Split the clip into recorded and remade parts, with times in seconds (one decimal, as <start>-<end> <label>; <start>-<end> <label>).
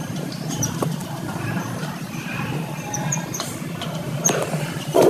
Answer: 0.0-5.1 remade